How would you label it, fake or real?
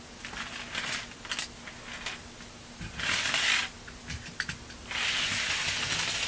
real